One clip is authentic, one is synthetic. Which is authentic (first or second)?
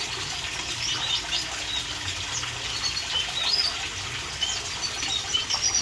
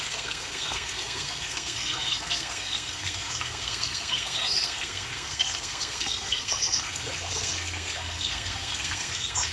first